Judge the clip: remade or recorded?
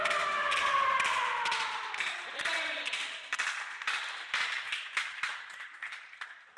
recorded